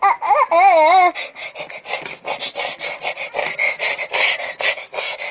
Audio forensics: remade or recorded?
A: recorded